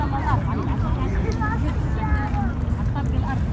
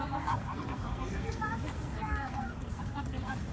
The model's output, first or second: second